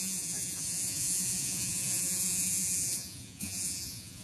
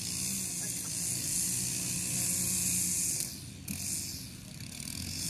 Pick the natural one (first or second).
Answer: second